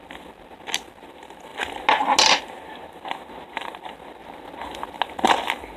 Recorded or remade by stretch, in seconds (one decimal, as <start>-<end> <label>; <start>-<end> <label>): 0.0-5.8 recorded